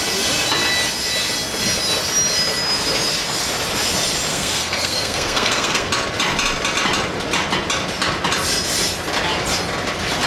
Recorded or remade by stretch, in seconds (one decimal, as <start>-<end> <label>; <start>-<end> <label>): 0.0-4.3 recorded; 4.3-5.9 remade; 5.9-10.3 recorded